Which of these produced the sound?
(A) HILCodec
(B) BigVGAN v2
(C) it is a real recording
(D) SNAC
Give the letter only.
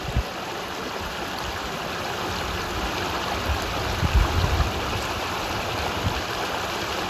B